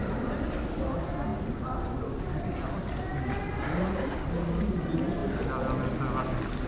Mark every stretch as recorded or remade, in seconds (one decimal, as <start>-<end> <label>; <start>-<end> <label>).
0.0-6.7 recorded